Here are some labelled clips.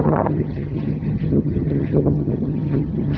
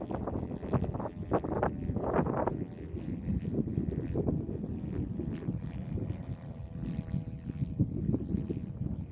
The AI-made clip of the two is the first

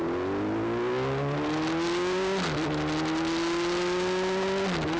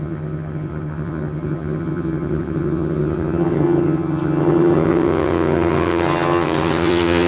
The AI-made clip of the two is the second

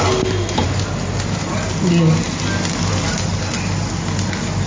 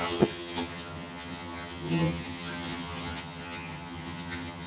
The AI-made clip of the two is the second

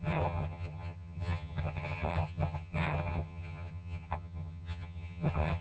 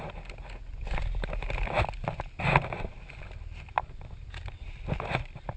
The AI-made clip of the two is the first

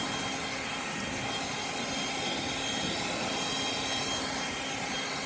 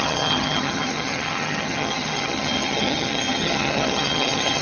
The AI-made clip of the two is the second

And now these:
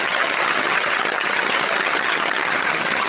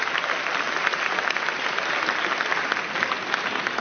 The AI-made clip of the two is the first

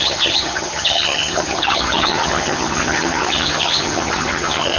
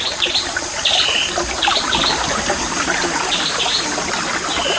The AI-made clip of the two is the first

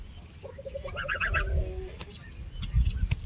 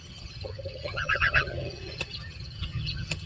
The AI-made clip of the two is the second